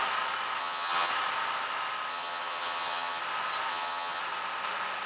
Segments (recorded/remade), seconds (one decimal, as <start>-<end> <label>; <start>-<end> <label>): 0.0-0.6 recorded; 0.6-1.1 remade; 1.1-2.1 recorded; 2.1-3.2 remade; 3.2-3.7 recorded; 3.7-4.2 remade; 4.2-5.1 recorded